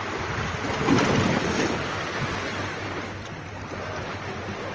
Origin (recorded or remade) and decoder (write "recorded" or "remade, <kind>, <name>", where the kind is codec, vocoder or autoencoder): recorded